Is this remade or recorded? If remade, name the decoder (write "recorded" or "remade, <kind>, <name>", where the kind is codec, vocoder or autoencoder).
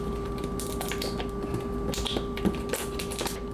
recorded